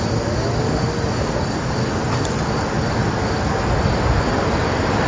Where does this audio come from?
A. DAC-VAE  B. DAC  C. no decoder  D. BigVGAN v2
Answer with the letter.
C